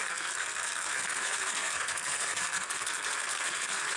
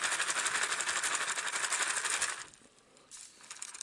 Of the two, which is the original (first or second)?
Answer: second